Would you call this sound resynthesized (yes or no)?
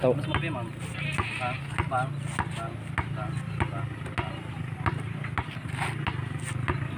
no